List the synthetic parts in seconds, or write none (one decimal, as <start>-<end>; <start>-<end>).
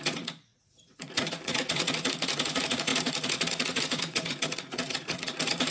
0.0-5.7